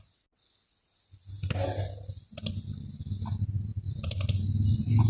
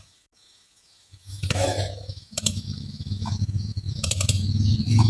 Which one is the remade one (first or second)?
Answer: second